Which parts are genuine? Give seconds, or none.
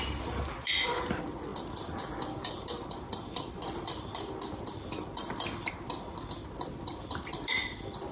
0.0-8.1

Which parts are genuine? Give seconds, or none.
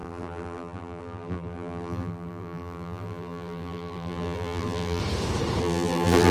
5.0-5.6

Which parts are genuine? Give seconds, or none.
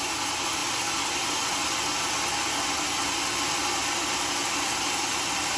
0.6-4.0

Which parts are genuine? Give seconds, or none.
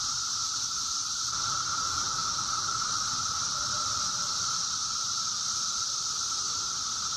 none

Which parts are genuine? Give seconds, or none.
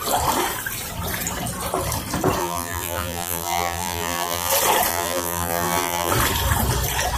0.0-2.4; 4.5-4.9; 6.1-7.2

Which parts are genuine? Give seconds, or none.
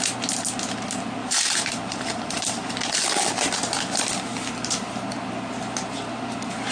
0.0-1.2; 2.8-6.7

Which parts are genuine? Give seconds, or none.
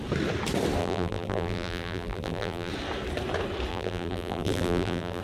0.0-0.8; 2.7-3.7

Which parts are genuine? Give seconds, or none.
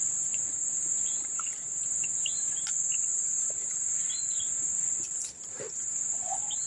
0.0-1.6; 2.6-3.1; 4.6-6.7